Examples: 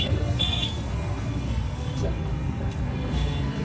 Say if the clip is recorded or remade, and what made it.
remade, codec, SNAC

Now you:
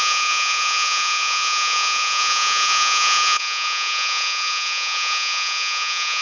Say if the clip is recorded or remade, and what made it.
remade, vocoder, Vocos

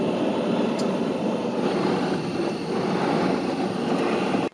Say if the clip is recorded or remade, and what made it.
recorded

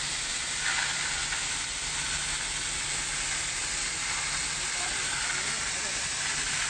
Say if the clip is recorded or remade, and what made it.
remade, vocoder, BigVGAN v2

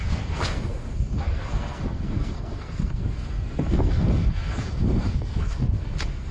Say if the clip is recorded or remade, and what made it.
remade, codec, SNAC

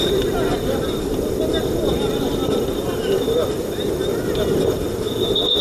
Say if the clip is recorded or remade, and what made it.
recorded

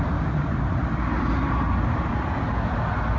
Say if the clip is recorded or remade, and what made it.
recorded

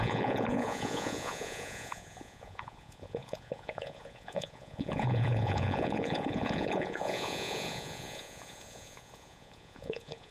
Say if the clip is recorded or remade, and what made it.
remade, vocoder, Vocos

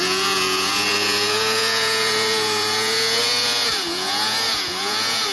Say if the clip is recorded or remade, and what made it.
remade, vocoder, Vocos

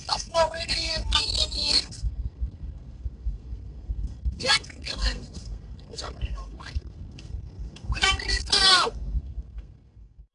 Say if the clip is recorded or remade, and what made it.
remade, codec, SNAC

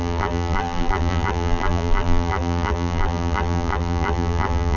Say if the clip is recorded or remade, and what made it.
remade, vocoder, BigVGAN v2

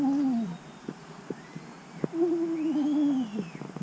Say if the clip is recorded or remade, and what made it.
recorded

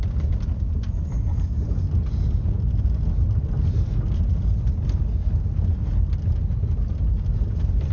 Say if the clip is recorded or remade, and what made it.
recorded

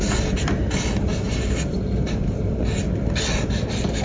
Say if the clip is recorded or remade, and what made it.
recorded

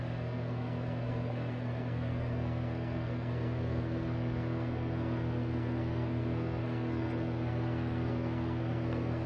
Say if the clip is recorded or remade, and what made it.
remade, codec, SNAC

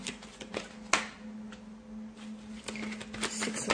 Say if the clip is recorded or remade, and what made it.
recorded